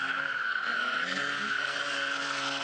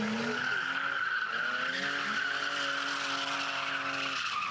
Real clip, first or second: second